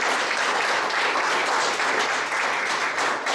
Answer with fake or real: real